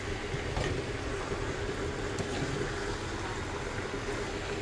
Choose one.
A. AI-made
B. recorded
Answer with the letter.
B